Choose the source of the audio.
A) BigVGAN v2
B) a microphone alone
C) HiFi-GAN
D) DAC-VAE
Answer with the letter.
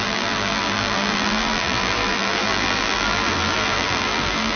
A